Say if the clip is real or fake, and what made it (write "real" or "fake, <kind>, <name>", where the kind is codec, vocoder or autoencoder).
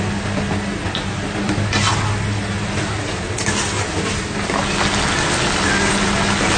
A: real